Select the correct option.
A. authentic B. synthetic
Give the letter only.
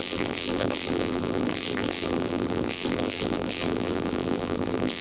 B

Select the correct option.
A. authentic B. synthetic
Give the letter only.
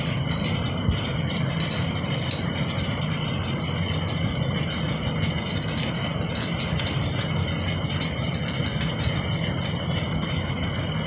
A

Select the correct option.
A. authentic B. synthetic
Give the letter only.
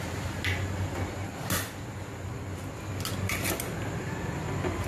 A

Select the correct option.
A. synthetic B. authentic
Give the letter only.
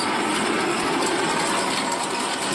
B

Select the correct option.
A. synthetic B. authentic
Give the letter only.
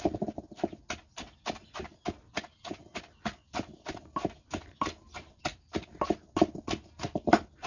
B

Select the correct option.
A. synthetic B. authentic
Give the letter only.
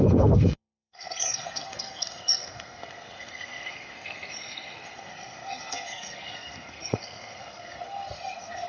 A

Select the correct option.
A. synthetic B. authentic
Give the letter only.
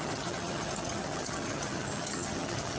A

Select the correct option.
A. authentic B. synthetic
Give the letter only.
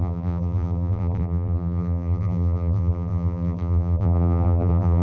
B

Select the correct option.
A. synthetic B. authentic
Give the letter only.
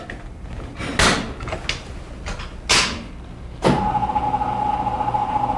B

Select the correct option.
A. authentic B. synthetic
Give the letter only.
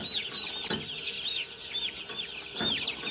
A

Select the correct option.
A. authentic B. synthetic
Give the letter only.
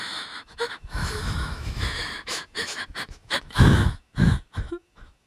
B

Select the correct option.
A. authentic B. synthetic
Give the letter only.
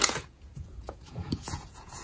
B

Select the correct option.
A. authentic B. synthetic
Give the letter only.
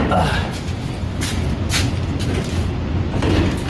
A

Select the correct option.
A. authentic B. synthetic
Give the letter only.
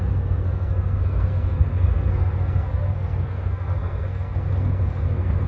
B